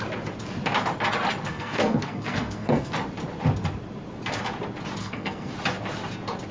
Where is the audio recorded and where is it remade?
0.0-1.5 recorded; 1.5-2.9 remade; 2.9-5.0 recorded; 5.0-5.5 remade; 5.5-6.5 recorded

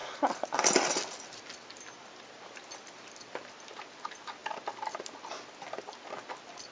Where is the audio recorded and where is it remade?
0.0-6.7 recorded

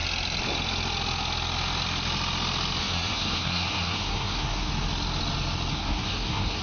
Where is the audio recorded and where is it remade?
0.0-2.8 recorded; 2.8-4.7 remade; 4.7-5.7 recorded; 5.7-6.6 remade

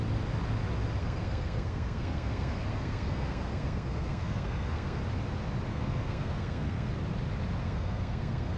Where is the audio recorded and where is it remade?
0.0-1.0 recorded; 1.0-5.0 remade; 5.0-5.7 recorded; 5.7-6.9 remade; 6.9-7.6 recorded; 7.6-8.6 remade